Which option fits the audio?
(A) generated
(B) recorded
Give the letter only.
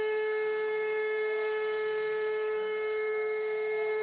A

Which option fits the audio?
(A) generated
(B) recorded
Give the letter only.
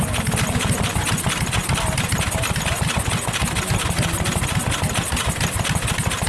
B